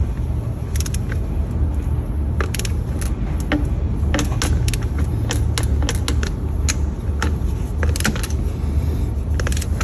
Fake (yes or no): no